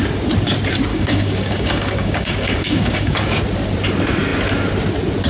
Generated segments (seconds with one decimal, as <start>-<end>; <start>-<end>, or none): 0.9-3.4